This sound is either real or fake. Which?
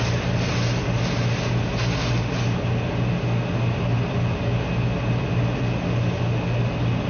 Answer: real